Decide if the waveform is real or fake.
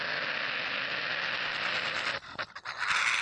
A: real